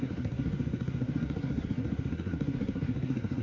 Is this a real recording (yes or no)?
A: no